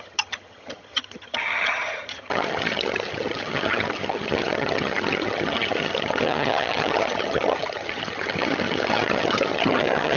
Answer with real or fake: fake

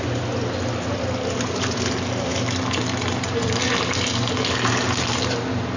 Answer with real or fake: real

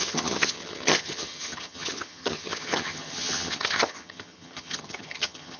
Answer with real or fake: fake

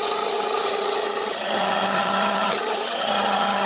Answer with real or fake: fake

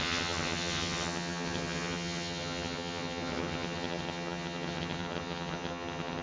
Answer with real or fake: fake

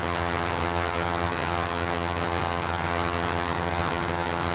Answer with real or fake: fake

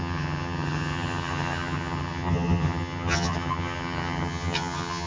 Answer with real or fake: fake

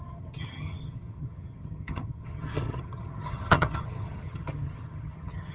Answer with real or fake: fake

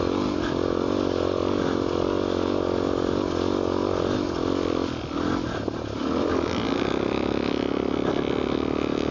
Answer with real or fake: real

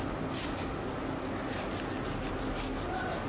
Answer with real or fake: real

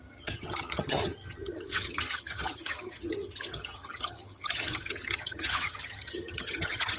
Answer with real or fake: fake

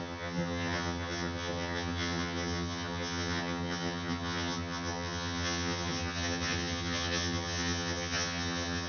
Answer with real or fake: fake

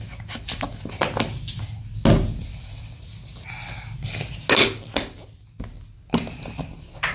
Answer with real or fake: real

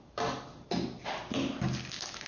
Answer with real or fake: real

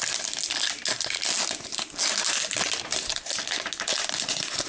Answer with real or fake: real